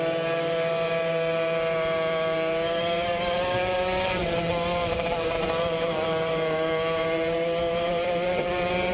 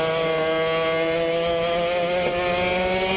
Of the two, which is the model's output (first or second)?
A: first